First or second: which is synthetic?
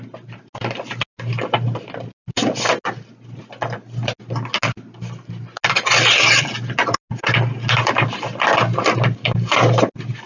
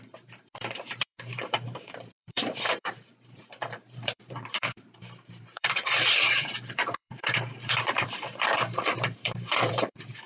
second